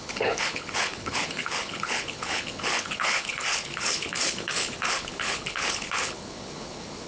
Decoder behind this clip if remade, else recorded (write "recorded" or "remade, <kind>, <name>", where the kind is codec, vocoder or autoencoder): remade, codec, HILCodec